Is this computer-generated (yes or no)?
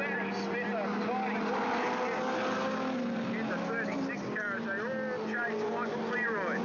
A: no